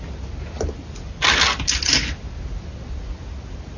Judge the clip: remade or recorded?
recorded